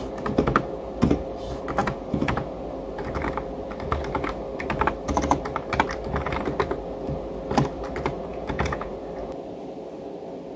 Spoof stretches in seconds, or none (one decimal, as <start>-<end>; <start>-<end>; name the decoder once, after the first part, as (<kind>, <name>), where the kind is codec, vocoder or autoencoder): 1.8-2.6 (vocoder, Vocos); 8.3-8.9